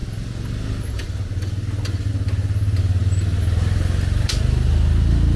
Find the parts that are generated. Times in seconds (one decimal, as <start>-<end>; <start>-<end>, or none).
none